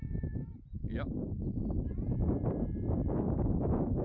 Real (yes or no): yes